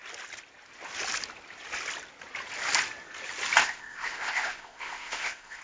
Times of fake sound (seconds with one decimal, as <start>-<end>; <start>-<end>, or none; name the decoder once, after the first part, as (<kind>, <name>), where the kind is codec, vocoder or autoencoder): 3.6-5.6 (codec, ZipCodec)